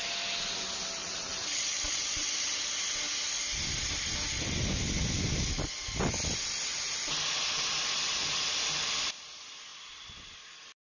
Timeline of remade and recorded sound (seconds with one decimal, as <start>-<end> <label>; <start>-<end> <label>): 0.0-1.0 recorded; 1.0-2.6 remade; 2.6-10.8 recorded